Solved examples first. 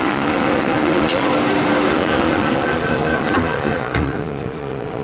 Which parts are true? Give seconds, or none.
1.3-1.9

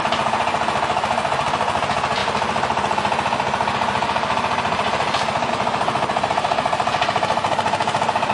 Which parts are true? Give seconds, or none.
0.0-8.3

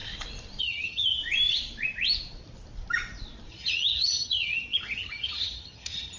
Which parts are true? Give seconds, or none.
0.0-0.6; 1.2-3.5